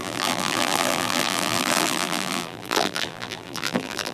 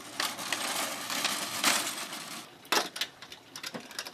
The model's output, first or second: first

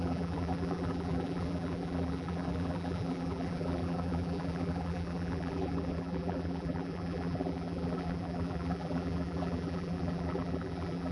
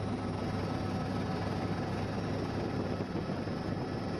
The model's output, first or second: first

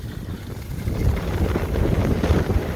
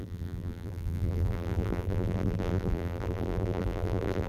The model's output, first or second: second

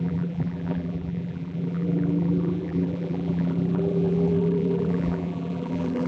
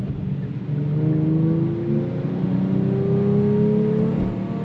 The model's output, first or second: first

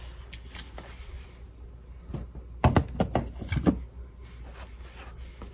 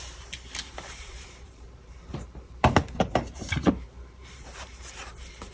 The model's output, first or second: second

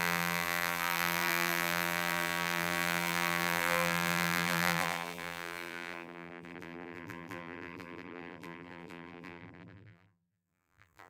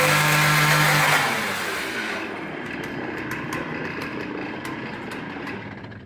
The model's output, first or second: first